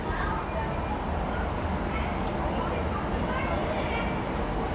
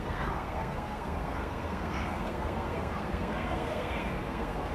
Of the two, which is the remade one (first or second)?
second